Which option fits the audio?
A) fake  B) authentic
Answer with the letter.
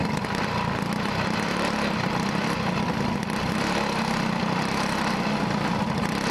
B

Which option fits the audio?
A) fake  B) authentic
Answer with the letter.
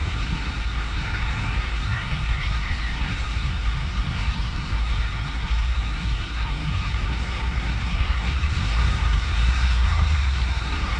A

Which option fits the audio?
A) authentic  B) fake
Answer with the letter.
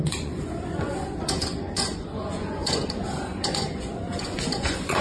B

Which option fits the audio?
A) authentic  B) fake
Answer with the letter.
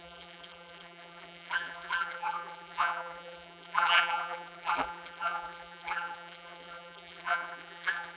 B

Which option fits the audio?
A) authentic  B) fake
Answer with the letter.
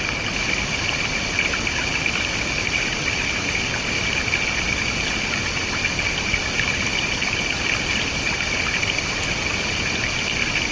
A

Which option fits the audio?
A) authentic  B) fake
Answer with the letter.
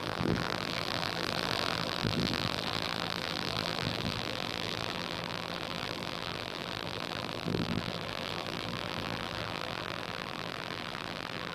B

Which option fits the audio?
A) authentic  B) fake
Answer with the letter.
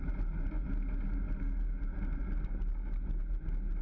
A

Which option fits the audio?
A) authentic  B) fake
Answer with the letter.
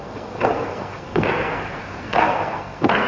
B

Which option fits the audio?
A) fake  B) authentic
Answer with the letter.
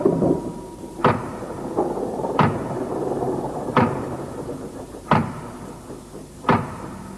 A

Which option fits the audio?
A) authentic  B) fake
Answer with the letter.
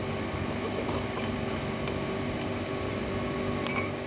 A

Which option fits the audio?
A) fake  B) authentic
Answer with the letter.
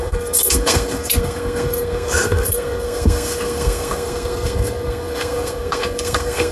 A